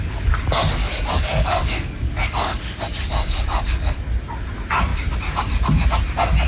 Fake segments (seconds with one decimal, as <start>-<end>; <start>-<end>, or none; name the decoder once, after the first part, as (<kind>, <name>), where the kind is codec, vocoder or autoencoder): 0.8-4.0 (codec, DAC)